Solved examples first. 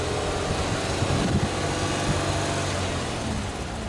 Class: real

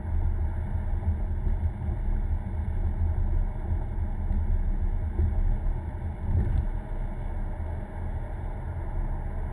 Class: real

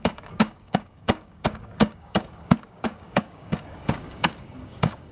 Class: fake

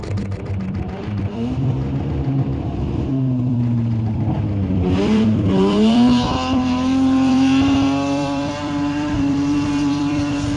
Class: fake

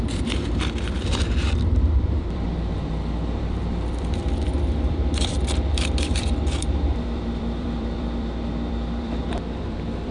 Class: fake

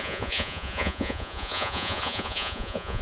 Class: fake